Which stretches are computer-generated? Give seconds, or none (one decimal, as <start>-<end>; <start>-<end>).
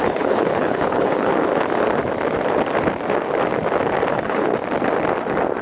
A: 0.0-1.3; 4.1-4.5